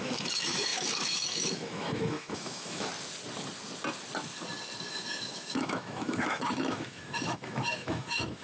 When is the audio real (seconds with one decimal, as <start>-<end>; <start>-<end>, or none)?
2.9-4.9